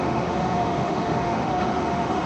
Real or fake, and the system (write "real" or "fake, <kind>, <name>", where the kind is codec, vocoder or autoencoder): fake, autoencoder, DAC-VAE